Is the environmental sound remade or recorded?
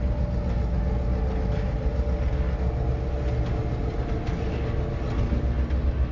recorded